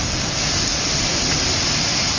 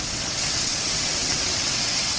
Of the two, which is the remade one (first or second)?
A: second